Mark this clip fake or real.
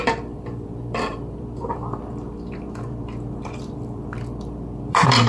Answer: fake